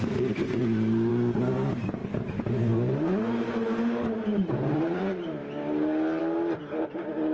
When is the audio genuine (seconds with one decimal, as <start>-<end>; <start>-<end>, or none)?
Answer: 0.0-2.0; 5.0-7.3